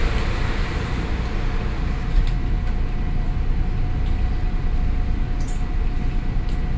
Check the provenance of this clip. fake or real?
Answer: real